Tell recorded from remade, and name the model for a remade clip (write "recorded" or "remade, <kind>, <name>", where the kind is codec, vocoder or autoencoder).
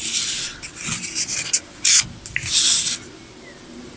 recorded